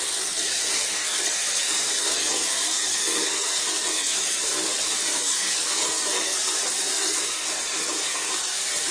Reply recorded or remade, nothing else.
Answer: remade